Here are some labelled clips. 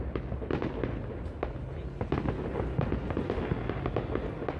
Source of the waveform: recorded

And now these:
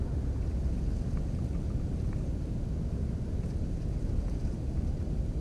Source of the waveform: recorded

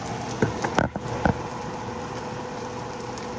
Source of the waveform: recorded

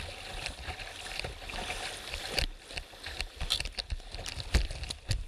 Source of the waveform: recorded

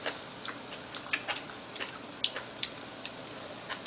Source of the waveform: recorded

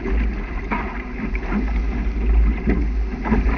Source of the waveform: recorded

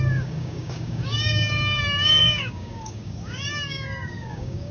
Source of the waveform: remade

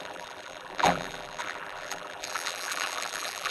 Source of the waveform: remade